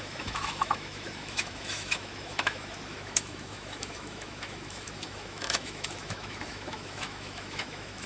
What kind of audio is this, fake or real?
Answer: fake